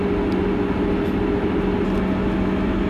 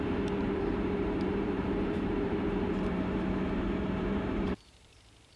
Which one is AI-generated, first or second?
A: second